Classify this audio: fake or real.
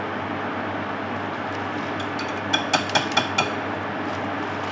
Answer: real